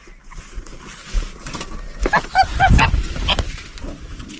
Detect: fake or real real